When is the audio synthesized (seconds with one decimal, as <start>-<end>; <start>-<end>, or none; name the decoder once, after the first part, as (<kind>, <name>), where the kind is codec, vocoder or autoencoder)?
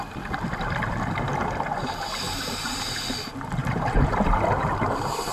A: 3.6-5.3 (vocoder, BigVGAN v2)